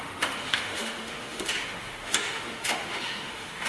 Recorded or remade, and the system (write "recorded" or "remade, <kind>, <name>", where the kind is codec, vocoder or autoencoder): remade, autoencoder, DAC-VAE